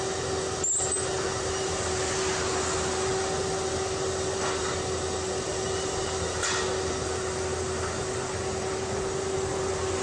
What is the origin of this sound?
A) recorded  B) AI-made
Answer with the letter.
A